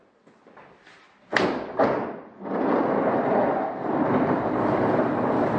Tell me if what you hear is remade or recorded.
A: recorded